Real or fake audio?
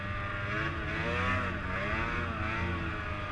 real